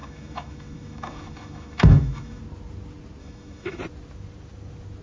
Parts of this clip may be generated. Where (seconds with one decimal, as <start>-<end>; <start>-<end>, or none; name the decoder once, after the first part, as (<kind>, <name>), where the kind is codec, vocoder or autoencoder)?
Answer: 0.0-2.4 (autoencoder, DAC-VAE); 3.2-3.8